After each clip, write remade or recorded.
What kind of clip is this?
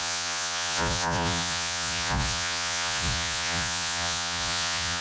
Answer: remade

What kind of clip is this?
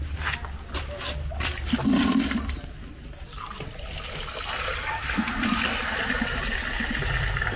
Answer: recorded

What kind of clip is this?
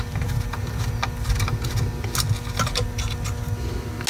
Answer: recorded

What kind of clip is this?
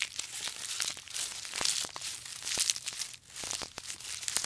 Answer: recorded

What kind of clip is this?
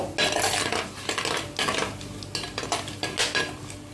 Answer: recorded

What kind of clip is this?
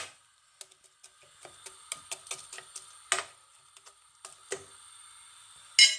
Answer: recorded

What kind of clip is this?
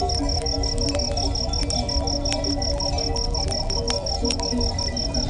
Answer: recorded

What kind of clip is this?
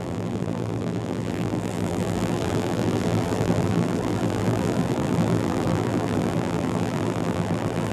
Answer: remade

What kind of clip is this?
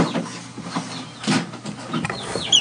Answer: recorded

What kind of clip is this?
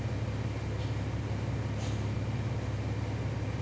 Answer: recorded